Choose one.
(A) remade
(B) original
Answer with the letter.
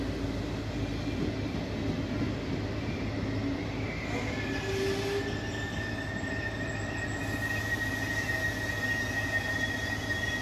B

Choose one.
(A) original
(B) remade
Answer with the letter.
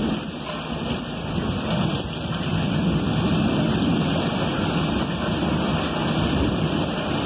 A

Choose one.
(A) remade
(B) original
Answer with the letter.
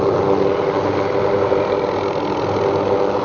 B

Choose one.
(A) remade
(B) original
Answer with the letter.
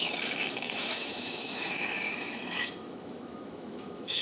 A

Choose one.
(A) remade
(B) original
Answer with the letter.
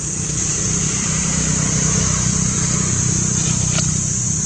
A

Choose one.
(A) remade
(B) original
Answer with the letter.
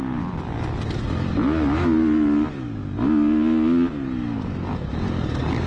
B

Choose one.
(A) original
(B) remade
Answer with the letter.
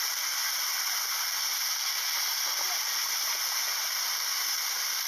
A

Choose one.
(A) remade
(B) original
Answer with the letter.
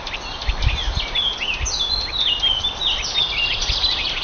B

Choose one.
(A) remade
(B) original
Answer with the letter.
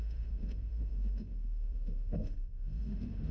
A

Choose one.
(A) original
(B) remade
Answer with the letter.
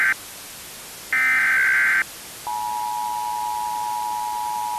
A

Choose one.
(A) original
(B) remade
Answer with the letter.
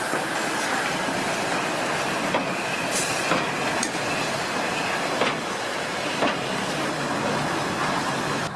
A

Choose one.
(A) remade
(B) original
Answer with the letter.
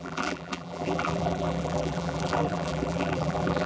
A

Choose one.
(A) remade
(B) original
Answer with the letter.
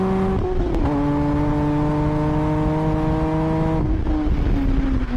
B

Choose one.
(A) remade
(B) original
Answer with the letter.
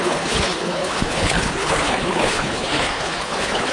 A